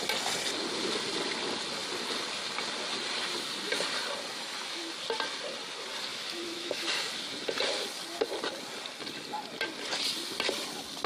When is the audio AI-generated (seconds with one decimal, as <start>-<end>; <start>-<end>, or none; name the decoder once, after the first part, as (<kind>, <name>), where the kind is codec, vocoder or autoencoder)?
4.3-4.9 (autoencoder, DAC-VAE); 6.1-7.1